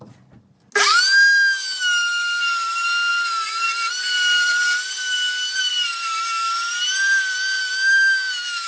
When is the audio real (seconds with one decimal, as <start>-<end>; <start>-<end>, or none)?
0.0-0.9; 2.4-7.6